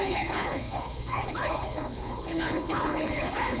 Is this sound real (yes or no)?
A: no